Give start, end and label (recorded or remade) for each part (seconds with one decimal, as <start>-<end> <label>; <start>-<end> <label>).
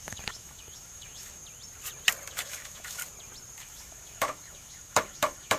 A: 0.0-1.4 remade; 1.4-2.3 recorded; 2.3-3.0 remade; 3.0-3.6 recorded; 3.6-5.6 remade